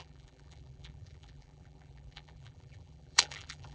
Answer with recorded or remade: remade